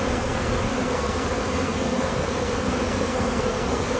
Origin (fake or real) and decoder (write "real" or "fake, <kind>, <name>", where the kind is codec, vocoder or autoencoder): fake, codec, SNAC